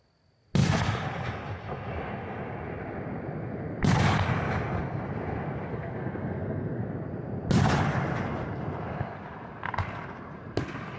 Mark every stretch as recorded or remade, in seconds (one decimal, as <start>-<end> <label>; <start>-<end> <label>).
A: 0.0-5.7 recorded; 5.7-6.8 remade; 6.8-11.0 recorded